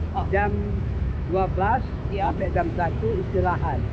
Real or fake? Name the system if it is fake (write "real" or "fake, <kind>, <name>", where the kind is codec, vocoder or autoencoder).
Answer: fake, autoencoder, DAC-VAE